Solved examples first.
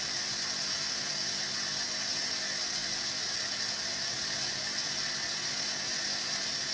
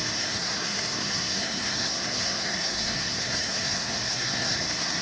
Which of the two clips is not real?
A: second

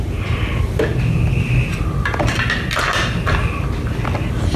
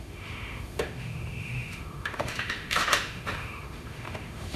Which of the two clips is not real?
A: second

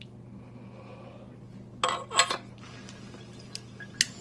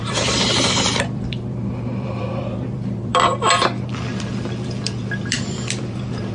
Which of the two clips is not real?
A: second